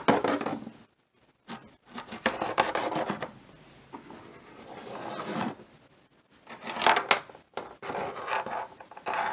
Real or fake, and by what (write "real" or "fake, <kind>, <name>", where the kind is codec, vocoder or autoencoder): real